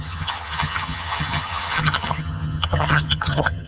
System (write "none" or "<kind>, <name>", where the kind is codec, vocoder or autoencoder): vocoder, HiFi-GAN